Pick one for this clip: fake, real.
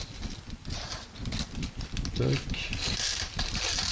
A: real